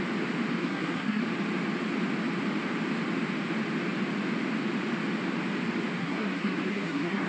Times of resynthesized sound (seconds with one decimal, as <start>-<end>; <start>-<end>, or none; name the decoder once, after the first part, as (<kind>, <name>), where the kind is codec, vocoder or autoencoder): 0.6-1.2 (codec, SNAC); 6.0-7.3